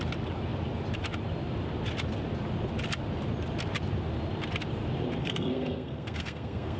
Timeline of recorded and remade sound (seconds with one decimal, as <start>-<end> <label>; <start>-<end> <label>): 0.0-5.2 recorded; 5.2-6.8 remade